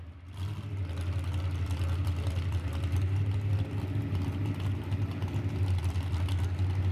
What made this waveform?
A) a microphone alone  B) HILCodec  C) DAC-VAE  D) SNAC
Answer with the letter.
A